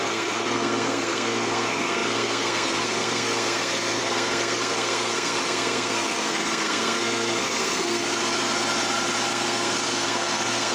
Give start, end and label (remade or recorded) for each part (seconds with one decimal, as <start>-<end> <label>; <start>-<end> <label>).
0.0-8.2 remade; 8.2-9.3 recorded; 9.3-10.7 remade